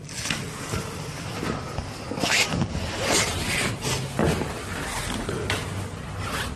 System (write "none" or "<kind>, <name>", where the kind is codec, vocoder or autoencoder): none